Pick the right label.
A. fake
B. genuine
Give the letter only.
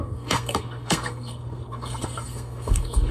A